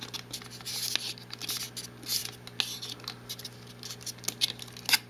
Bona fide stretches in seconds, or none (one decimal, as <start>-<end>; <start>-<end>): 0.0-5.1